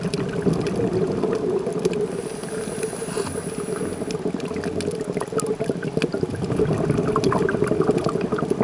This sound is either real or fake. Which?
real